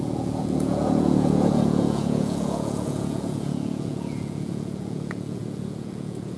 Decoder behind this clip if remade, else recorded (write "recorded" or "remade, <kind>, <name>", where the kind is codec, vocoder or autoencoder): remade, vocoder, Vocos